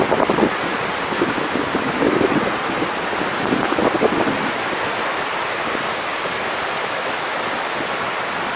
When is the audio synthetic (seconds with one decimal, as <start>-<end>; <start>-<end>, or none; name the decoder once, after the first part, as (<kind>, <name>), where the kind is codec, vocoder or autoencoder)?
6.8-7.4 (autoencoder, DAC-VAE)

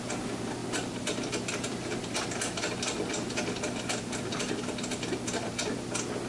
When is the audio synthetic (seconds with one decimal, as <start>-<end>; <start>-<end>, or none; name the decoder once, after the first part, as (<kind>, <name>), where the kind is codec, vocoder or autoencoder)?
none

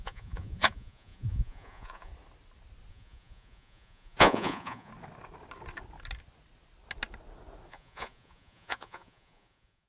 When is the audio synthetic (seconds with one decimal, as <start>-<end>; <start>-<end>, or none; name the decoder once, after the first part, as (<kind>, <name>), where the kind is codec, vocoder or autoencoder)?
0.0-2.1 (vocoder, Vocos); 2.9-4.9; 7.7-9.9

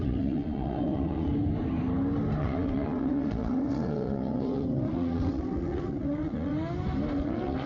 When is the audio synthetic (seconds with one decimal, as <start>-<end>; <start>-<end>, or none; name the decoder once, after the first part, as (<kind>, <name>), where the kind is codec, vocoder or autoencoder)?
0.0-1.3 (vocoder, WaveNeXt); 2.4-6.5; 7.2-7.7